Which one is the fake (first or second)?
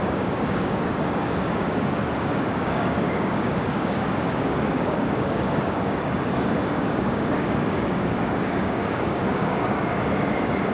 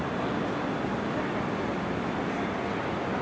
first